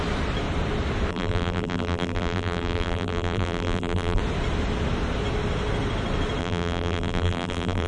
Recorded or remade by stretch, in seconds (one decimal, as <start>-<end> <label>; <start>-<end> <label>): 0.0-1.1 recorded; 1.1-4.2 remade; 4.2-6.4 recorded; 6.4-7.9 remade